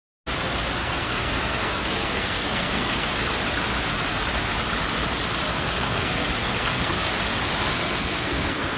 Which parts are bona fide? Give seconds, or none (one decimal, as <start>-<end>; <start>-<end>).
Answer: 0.0-0.8; 3.1-5.5; 7.1-7.7